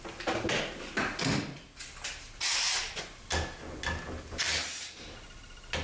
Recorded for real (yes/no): yes